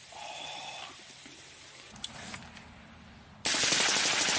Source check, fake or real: real